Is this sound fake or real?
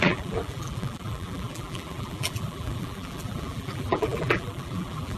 fake